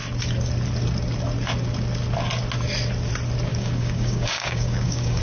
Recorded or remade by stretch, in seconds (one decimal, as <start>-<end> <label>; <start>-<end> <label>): 0.0-3.5 recorded; 3.5-5.2 remade

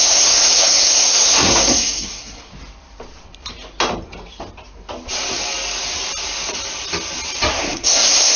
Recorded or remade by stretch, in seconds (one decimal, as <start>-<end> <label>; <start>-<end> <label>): 0.0-2.5 remade; 2.5-7.5 recorded; 7.5-8.4 remade

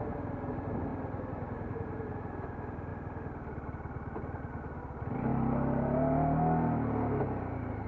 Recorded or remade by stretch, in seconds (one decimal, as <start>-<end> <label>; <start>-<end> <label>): 0.0-0.9 recorded; 0.9-2.1 remade; 2.1-7.9 recorded

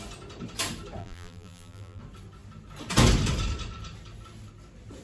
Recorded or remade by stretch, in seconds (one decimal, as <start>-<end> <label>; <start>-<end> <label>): 0.0-1.0 recorded; 1.0-2.0 remade; 2.0-5.0 recorded

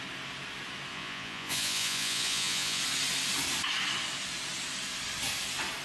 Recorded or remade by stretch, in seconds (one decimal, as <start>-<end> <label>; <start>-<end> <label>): 0.0-0.9 recorded; 0.9-2.8 remade; 2.8-5.8 recorded

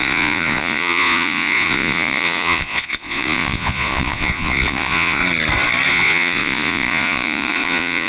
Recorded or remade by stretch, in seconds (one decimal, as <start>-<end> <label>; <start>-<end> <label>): 0.0-5.2 remade; 5.2-5.9 recorded; 5.9-8.1 remade